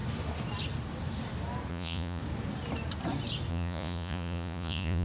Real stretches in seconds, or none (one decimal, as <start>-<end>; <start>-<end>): 0.0-1.7; 2.2-3.5